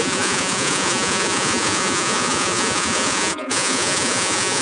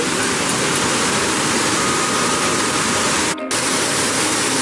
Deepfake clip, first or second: first